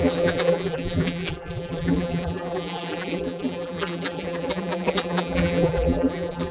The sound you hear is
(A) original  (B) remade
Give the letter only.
B